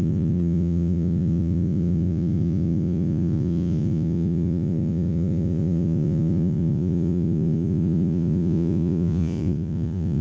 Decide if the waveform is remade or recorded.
remade